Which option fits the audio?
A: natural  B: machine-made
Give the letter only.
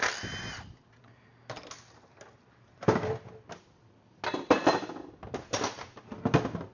A